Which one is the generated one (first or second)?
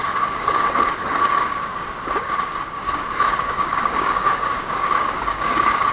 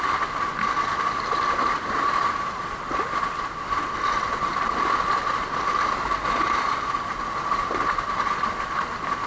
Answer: first